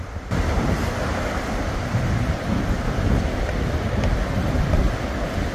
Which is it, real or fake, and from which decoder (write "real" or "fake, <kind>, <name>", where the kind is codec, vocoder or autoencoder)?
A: real